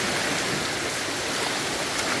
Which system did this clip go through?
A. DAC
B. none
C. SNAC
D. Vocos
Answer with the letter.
B